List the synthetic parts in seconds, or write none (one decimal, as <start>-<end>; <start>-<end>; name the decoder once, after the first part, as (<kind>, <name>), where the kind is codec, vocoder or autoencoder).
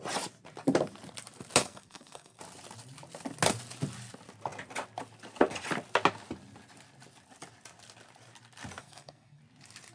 1.6-2.4 (codec, SNAC); 8.8-9.4